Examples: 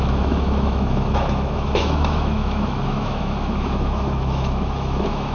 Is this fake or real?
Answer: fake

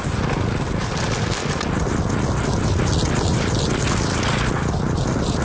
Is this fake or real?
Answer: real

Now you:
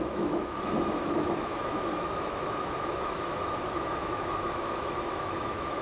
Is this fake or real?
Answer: fake